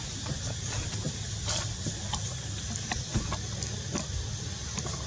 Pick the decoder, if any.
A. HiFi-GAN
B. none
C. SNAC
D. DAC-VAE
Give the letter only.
B